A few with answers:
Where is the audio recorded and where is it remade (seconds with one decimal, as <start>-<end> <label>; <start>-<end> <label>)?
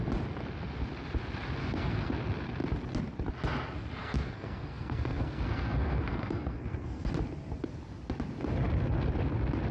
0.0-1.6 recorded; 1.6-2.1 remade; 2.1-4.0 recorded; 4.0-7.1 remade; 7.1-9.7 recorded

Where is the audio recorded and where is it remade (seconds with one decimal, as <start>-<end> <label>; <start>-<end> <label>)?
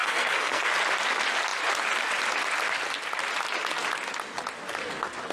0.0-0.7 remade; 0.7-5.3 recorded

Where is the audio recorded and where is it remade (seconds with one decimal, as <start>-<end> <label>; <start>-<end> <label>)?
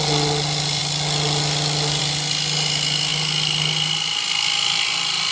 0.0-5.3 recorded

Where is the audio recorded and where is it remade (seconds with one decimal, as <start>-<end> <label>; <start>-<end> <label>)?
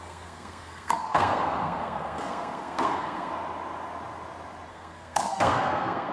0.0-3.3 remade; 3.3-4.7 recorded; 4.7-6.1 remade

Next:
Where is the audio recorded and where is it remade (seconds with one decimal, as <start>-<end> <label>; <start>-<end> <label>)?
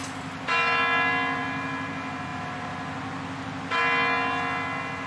0.0-5.1 recorded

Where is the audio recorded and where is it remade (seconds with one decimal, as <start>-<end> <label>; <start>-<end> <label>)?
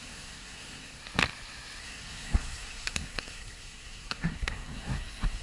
0.0-1.0 remade; 1.0-1.8 recorded; 1.8-5.4 remade